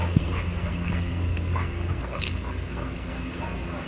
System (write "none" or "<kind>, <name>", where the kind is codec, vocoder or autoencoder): codec, SNAC